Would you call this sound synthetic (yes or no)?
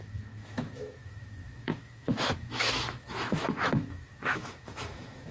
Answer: yes